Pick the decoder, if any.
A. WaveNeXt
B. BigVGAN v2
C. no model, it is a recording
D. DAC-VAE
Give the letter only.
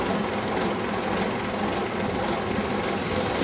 C